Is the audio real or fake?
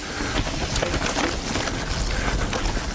real